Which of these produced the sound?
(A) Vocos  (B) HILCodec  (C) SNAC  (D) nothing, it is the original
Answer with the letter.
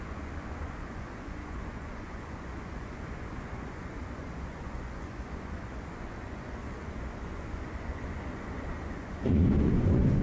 A